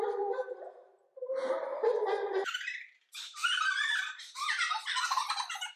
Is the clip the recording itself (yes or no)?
no